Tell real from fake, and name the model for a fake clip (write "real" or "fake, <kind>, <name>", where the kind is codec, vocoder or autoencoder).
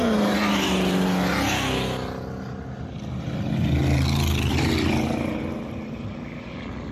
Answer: real